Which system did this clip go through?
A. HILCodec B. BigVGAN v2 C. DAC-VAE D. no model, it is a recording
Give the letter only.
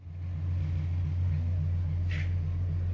D